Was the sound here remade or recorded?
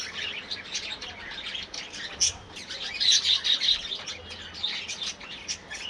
recorded